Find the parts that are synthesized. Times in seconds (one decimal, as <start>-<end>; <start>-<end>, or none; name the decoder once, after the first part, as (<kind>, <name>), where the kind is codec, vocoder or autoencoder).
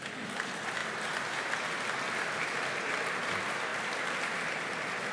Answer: 3.7-5.1 (vocoder, BigVGAN v2)